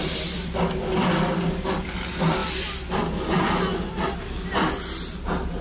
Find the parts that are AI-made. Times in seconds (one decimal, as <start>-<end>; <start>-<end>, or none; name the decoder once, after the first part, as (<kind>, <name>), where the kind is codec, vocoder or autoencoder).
none